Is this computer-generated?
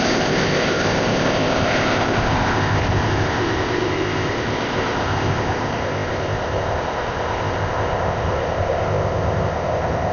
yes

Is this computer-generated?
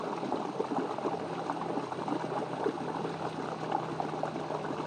no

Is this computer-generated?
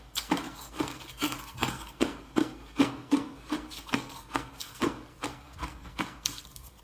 yes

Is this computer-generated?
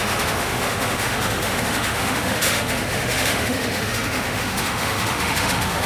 yes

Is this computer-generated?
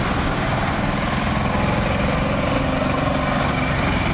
no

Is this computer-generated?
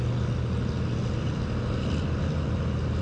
no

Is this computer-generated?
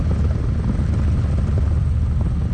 no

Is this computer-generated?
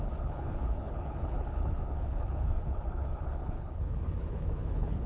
yes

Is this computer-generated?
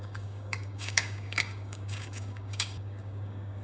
yes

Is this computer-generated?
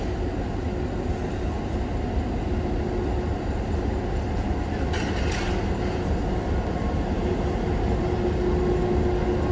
no